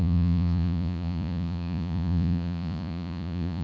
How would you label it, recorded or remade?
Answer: remade